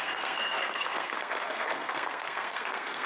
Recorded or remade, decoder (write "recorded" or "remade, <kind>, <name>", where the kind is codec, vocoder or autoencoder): remade, codec, SNAC